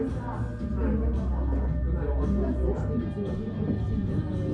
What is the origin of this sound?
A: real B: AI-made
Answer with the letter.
A